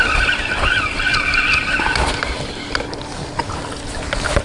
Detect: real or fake real